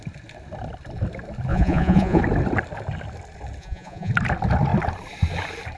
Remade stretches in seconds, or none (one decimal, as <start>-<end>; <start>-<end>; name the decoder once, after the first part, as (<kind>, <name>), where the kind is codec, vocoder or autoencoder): 1.5-2.2 (vocoder, Vocos); 3.6-4.1